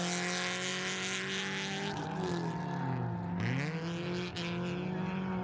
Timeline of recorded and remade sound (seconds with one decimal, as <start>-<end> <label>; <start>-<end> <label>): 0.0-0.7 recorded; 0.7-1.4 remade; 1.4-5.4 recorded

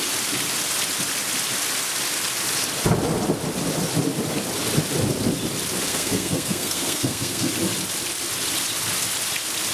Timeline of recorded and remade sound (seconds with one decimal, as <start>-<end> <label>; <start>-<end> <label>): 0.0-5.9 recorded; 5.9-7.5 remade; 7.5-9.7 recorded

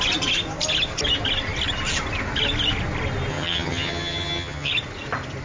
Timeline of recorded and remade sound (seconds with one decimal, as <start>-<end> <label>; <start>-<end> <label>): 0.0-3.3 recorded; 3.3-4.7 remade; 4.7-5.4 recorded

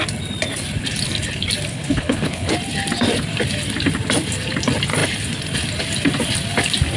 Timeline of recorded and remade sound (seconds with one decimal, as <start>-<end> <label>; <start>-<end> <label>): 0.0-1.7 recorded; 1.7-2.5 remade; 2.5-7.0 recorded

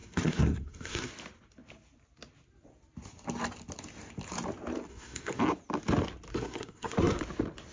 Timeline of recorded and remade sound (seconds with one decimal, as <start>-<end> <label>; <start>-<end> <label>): 0.0-1.1 remade; 1.1-4.9 recorded; 4.9-5.4 remade; 5.4-6.3 recorded; 6.3-7.2 remade; 7.2-7.7 recorded

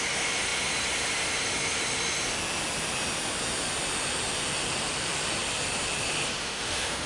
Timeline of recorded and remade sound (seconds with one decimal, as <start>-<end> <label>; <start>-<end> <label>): 0.0-6.4 recorded; 6.4-7.1 remade

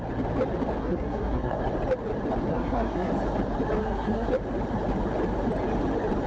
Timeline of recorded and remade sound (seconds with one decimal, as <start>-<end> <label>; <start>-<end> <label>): 0.0-0.8 recorded; 0.8-1.6 remade; 1.6-2.5 recorded; 2.5-3.1 remade; 3.1-3.8 recorded; 3.8-4.3 remade; 4.3-6.3 recorded